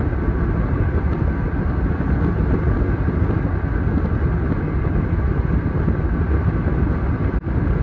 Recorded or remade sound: recorded